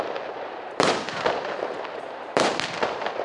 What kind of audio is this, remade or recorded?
remade